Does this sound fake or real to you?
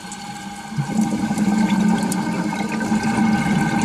real